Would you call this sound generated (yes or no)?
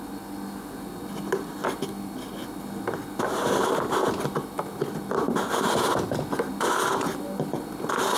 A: no